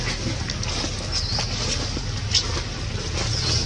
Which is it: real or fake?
real